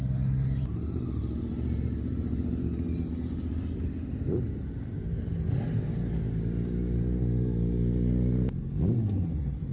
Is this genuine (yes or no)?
yes